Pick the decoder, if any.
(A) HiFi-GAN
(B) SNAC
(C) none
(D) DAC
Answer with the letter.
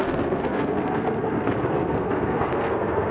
B